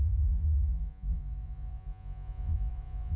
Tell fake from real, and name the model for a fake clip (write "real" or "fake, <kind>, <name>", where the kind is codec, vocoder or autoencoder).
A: fake, vocoder, Vocos